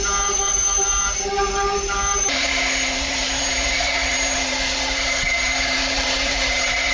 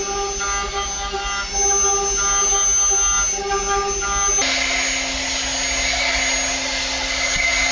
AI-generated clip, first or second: first